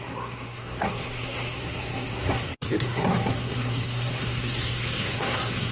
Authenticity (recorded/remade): remade